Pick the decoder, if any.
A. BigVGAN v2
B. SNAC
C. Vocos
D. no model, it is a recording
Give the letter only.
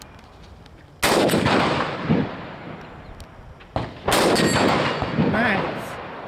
D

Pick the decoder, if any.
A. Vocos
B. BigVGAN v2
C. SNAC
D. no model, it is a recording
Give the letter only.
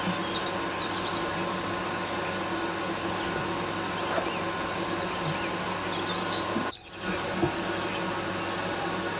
D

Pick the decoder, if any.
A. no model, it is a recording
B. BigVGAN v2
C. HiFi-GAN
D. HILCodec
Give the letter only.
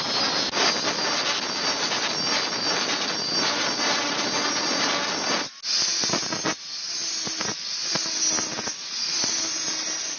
A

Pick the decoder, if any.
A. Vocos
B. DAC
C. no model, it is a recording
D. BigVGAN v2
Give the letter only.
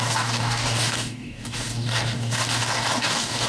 B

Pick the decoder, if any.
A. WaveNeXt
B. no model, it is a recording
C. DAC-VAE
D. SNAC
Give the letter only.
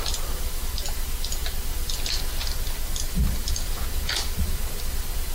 B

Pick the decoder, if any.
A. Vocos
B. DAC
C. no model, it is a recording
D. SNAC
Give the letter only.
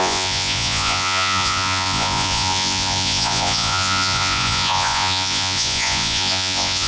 A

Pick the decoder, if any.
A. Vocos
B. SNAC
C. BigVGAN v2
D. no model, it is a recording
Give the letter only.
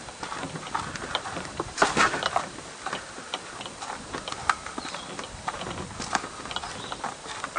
C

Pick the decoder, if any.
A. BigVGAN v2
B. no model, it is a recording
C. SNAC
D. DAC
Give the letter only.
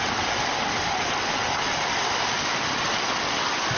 B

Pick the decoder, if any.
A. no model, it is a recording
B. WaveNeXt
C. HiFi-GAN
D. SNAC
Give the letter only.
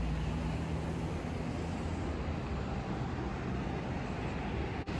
A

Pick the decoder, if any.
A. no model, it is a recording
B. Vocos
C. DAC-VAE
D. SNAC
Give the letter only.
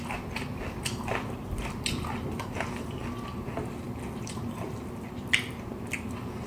A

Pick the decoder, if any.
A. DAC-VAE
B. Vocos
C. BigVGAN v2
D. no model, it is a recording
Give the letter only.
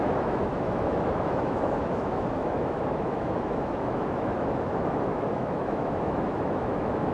A